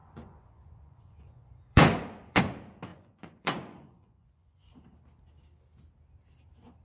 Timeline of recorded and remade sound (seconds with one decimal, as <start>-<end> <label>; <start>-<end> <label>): 0.0-2.4 remade; 2.4-2.9 recorded; 2.9-4.8 remade; 4.8-6.8 recorded